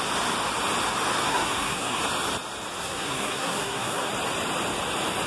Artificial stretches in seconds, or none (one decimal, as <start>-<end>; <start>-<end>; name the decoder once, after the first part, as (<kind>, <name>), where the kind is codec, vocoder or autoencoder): 1.3-2.0 (codec, SNAC); 2.8-4.1